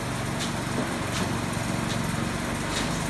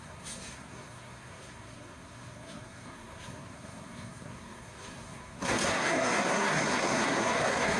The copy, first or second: second